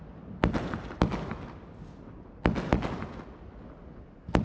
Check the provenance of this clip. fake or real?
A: real